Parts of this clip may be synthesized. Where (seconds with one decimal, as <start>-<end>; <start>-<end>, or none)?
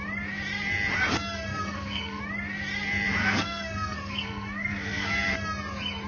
1.5-2.2; 3.2-5.1